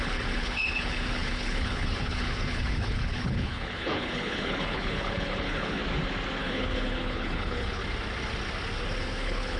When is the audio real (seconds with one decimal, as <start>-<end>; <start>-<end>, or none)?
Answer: 5.8-6.4; 7.8-9.0